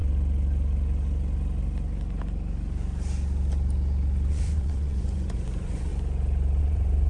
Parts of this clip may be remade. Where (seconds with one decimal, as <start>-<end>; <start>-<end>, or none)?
4.3-5.9; 6.6-7.1

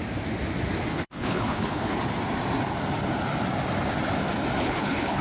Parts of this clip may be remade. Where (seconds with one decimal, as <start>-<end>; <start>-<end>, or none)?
0.9-2.0; 4.6-5.2

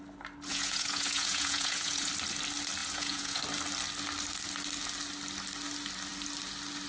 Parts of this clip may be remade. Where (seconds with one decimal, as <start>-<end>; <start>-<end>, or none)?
0.5-2.1; 2.8-3.4

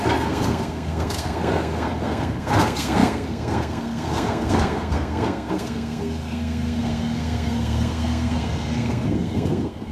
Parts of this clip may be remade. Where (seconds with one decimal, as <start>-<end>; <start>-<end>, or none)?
0.0-9.9

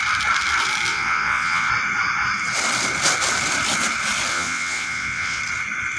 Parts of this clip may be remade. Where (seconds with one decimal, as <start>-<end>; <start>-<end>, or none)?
0.9-1.7; 4.3-5.4

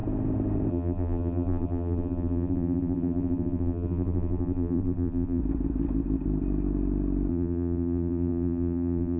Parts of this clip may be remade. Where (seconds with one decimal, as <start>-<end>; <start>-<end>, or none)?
0.7-5.4; 7.3-9.2